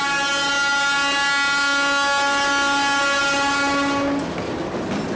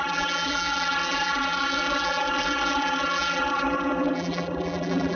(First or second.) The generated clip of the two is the second